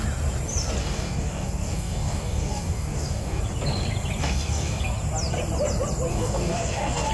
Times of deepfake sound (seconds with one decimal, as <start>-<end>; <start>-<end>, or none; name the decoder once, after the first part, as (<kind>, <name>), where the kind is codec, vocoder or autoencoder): 0.8-3.4 (codec, DAC); 4.2-4.8; 6.1-7.1